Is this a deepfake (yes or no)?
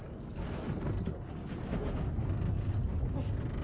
no